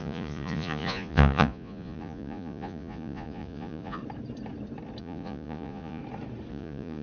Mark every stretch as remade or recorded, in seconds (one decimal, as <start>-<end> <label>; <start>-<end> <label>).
0.0-4.0 remade; 4.0-5.0 recorded; 5.0-6.0 remade; 6.0-6.5 recorded; 6.5-7.0 remade